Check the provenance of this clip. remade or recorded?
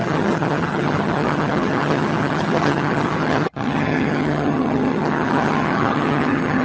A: remade